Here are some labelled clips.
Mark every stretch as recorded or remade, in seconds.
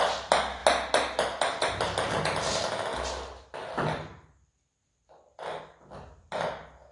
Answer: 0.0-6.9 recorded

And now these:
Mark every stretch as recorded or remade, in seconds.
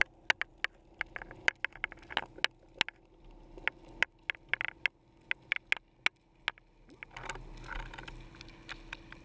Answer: 0.0-9.2 recorded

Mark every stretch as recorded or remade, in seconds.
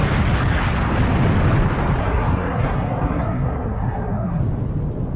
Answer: 0.0-2.0 recorded; 2.0-4.4 remade; 4.4-5.2 recorded